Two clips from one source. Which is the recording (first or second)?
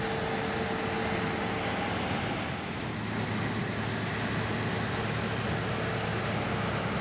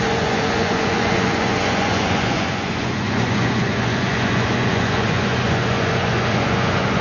first